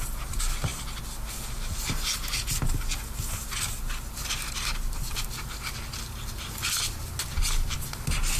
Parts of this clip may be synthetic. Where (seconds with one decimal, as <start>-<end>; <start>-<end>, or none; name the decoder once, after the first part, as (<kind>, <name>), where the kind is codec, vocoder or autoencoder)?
none